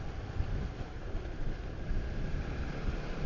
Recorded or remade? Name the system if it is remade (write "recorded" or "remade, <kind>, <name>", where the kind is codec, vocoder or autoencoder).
recorded